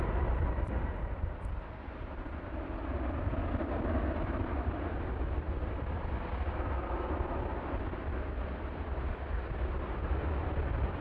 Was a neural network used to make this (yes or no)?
no